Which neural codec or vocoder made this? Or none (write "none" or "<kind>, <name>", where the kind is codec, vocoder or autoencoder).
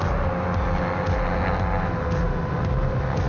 none